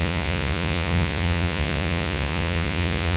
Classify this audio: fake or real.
fake